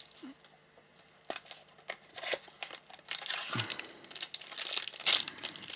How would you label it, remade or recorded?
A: recorded